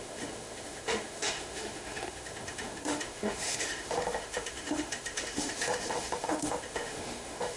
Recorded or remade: remade